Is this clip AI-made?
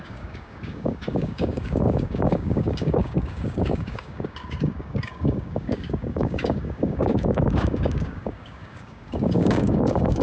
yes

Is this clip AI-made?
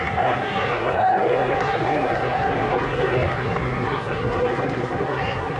yes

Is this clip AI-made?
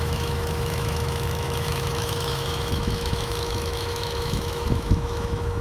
yes